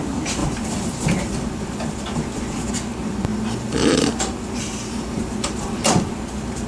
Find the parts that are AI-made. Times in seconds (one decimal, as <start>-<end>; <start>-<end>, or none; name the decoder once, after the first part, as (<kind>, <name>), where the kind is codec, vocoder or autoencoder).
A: 0.4-2.7 (vocoder, BigVGAN v2); 3.3-6.1